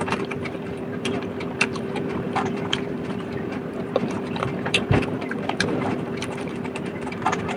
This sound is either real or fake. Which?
fake